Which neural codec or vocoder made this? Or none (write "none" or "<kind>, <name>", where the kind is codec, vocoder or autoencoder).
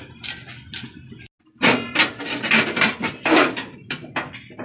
none